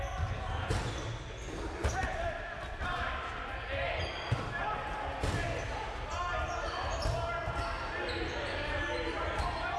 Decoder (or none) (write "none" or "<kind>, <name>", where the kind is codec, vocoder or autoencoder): none